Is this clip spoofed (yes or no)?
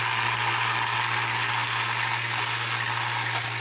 no